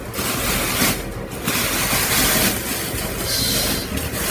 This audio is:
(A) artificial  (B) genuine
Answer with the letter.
B